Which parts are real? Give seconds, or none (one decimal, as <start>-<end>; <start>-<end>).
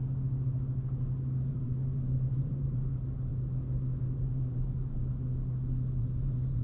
0.0-1.5; 3.3-4.0; 5.0-6.0